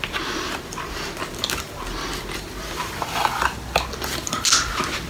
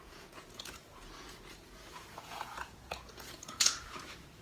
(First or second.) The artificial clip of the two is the second